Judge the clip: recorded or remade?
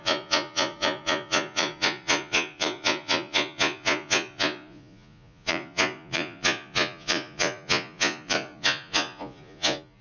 remade